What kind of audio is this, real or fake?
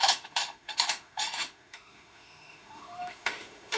fake